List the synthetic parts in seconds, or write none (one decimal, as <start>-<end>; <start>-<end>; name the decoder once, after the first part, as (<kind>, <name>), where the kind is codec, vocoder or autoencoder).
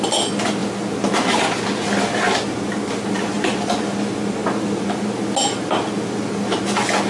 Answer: none